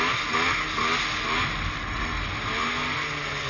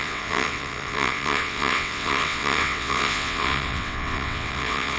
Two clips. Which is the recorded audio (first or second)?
first